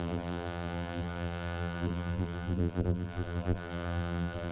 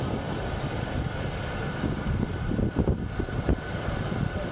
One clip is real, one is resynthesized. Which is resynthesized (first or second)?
first